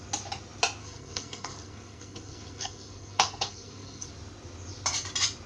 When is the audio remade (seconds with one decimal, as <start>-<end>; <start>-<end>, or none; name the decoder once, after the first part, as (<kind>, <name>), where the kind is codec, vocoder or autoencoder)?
0.8-4.1 (codec, SNAC)